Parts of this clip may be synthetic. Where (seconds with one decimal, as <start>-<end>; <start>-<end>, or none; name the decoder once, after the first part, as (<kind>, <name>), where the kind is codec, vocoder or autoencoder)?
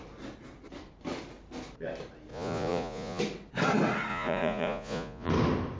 2.3-3.2 (vocoder, Vocos); 4.1-5.3